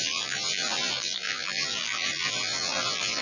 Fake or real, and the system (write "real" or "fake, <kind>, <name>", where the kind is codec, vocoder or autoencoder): fake, vocoder, BigVGAN v2